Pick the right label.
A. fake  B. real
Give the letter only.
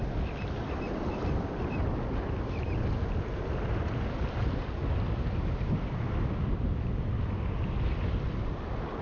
B